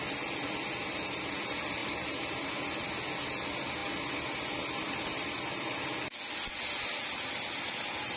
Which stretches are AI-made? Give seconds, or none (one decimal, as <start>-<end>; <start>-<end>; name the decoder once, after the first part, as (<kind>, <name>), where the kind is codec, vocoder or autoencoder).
1.8-2.5 (vocoder, BigVGAN v2)